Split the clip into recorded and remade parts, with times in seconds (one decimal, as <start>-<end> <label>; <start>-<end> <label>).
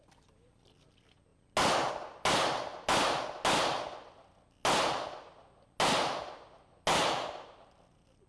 0.0-8.3 recorded